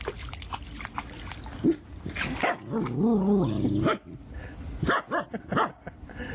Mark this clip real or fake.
real